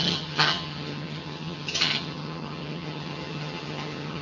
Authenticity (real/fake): fake